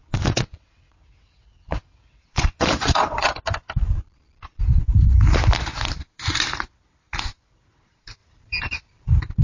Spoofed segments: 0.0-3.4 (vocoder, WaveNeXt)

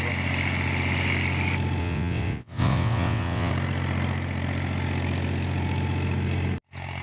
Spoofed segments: 1.8-3.5 (vocoder, WaveNeXt)

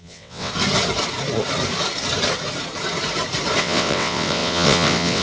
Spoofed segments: 0.0-0.5 (vocoder, WaveNeXt); 3.6-5.2

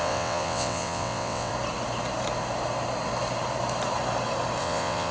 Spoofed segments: 0.0-1.5 (vocoder, WaveNeXt); 4.6-5.1